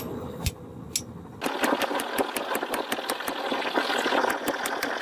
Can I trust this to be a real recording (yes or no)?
yes